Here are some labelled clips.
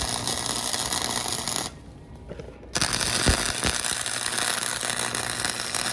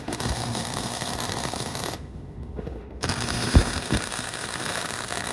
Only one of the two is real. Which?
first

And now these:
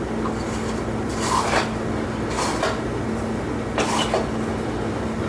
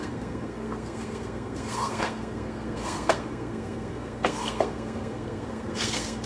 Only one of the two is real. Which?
first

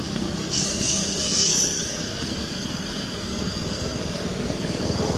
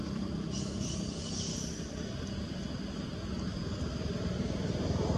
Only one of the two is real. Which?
second